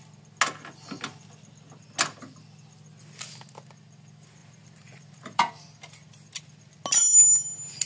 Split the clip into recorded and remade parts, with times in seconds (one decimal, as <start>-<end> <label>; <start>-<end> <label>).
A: 0.0-4.4 recorded; 4.4-5.5 remade; 5.5-7.9 recorded